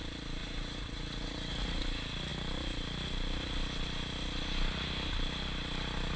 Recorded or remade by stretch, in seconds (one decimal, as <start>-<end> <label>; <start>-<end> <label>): 0.0-0.4 recorded; 0.4-1.8 remade; 1.8-6.2 recorded